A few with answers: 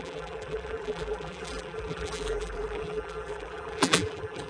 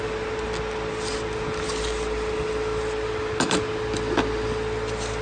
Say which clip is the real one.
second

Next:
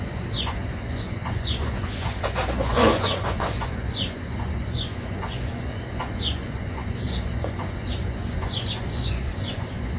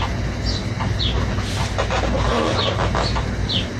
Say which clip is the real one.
second